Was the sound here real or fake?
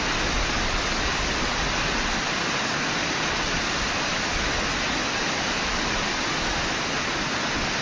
real